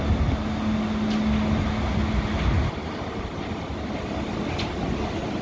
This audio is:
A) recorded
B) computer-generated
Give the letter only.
A